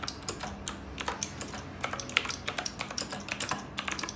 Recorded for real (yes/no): yes